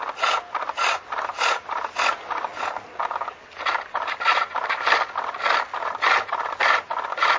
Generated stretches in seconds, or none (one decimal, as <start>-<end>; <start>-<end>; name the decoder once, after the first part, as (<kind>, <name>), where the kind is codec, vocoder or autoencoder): none